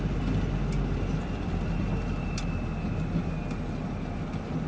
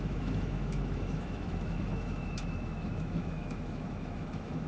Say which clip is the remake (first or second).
second